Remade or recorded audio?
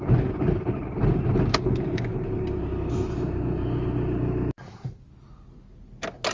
recorded